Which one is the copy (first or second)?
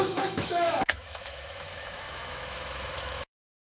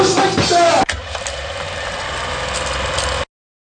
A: first